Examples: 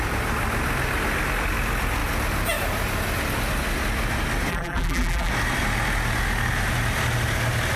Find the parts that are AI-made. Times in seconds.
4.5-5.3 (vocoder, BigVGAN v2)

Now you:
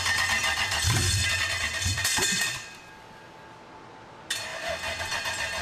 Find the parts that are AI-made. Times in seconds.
none